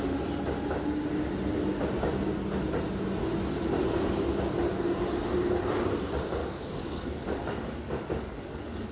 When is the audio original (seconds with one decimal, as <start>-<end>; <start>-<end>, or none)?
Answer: 0.0-6.4